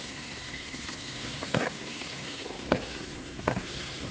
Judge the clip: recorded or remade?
remade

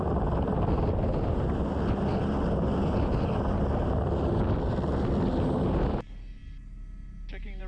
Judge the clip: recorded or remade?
recorded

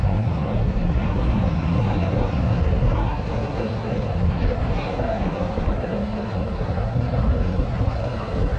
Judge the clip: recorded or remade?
remade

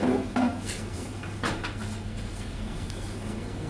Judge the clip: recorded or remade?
remade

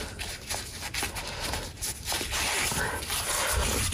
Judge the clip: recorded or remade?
recorded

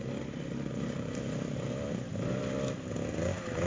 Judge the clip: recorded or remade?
recorded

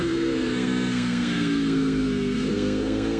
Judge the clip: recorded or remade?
remade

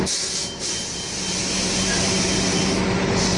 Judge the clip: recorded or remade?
recorded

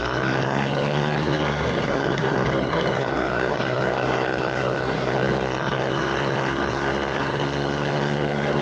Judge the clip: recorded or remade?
remade